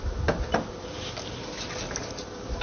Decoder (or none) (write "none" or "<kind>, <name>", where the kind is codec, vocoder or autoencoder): none